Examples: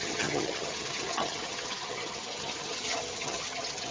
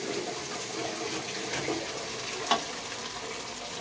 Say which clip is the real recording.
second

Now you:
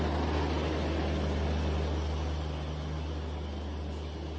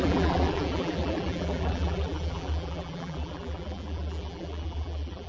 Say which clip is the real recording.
first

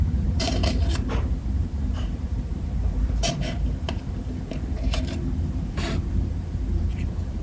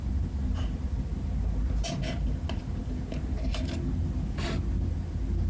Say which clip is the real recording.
second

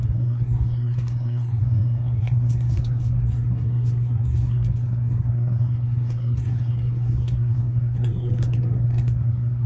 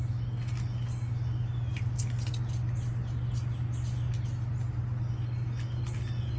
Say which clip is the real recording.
second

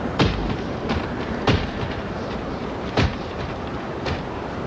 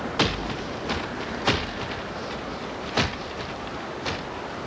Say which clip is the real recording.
second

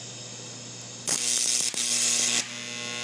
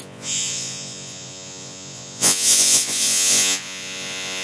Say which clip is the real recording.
first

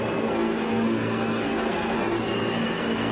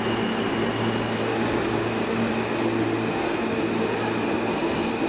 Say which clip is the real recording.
second